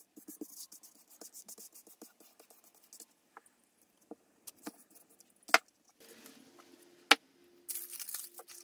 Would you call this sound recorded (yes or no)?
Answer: yes